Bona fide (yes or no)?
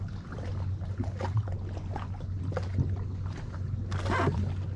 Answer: yes